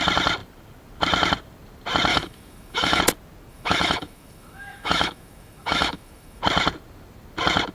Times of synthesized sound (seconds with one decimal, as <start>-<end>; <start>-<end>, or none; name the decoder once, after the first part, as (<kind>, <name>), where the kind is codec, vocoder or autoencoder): 2.1-3.0 (autoencoder, DAC-VAE); 3.5-6.4